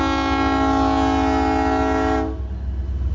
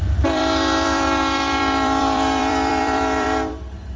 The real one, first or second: first